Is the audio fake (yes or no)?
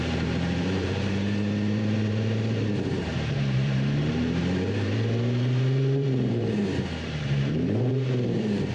yes